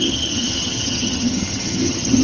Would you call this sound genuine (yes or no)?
no